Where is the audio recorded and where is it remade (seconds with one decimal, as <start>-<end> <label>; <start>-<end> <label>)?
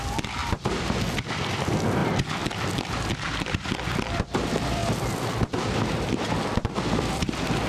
0.0-4.8 remade; 4.8-6.8 recorded; 6.8-7.7 remade